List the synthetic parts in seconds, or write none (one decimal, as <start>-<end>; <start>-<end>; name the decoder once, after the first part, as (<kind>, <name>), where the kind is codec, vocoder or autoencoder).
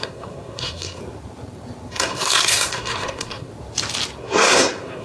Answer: 0.0-1.0 (codec, SNAC); 1.9-3.5; 4.2-5.0